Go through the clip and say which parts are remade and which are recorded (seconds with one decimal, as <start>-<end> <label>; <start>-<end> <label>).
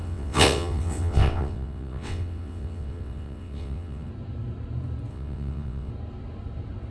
0.0-4.1 remade; 4.1-5.1 recorded; 5.1-5.9 remade; 5.9-6.9 recorded